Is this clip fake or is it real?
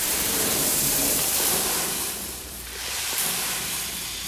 fake